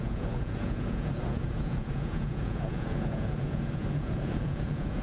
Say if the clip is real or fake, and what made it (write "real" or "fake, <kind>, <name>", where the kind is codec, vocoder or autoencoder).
fake, vocoder, Vocos